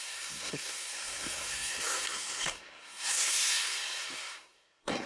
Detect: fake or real fake